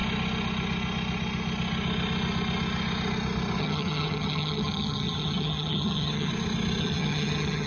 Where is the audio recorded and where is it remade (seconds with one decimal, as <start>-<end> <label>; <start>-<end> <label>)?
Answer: 0.0-3.6 recorded; 3.6-6.3 remade; 6.3-6.8 recorded; 6.8-7.7 remade